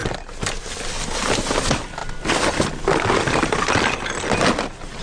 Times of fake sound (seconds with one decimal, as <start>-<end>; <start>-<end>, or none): none